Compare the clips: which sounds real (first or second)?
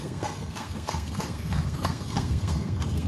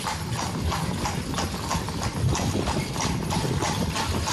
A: second